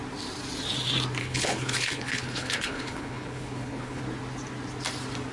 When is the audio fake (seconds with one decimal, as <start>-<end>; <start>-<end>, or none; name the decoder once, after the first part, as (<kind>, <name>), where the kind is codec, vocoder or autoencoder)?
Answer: 1.2-4.0 (codec, HILCodec)